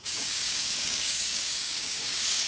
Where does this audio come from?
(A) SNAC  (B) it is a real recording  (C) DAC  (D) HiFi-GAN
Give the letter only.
C